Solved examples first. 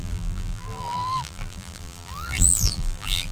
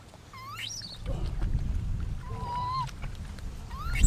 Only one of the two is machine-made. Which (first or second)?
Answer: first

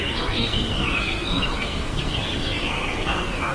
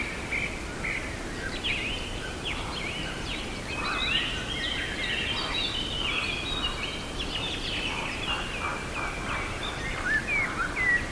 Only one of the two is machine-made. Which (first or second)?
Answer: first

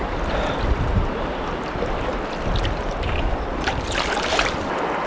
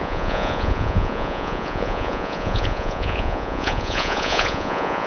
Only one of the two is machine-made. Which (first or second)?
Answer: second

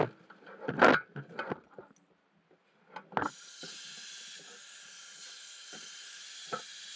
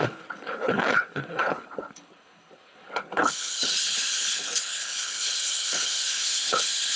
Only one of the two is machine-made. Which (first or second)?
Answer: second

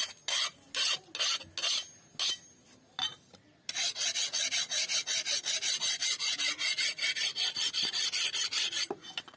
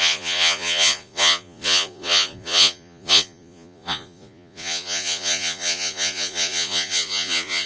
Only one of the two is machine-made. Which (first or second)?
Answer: second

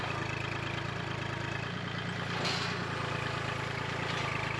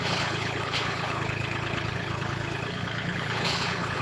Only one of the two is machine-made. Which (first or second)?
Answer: second